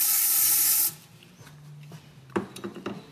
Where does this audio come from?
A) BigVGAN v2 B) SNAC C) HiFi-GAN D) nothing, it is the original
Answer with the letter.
D